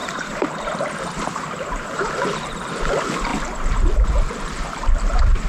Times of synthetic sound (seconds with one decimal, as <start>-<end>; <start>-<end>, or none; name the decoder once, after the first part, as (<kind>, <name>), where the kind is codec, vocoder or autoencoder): 0.0-2.1 (vocoder, BigVGAN v2)